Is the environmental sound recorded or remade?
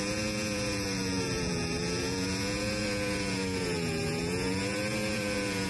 remade